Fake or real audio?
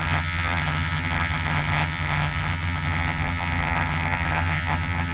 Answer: fake